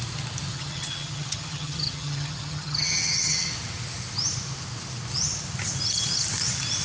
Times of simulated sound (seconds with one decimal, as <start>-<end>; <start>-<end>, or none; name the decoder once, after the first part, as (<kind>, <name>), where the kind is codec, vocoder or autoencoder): 0.5-3.5 (vocoder, HiFi-GAN)